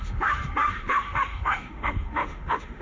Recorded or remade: remade